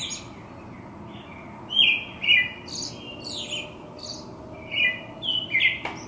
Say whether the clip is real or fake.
real